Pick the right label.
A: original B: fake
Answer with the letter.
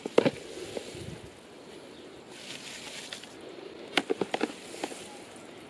A